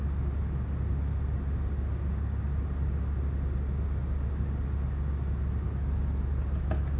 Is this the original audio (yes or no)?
yes